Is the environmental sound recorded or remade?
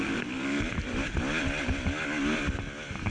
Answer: recorded